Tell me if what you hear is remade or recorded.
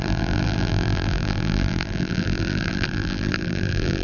remade